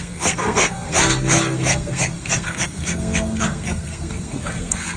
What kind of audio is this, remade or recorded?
remade